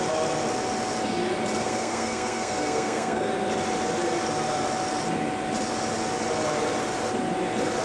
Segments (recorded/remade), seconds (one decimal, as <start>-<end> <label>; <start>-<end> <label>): 0.0-1.6 recorded; 1.6-3.3 remade; 3.3-7.8 recorded